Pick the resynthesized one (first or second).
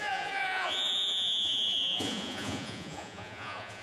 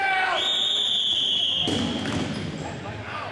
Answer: first